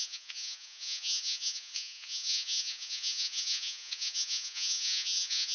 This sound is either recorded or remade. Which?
remade